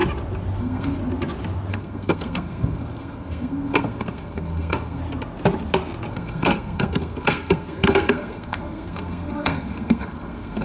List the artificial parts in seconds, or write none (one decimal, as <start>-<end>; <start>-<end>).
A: 0.6-1.0; 1.7-5.0; 6.1-10.6